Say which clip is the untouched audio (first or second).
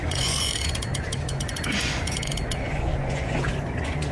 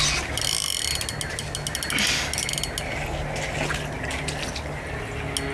second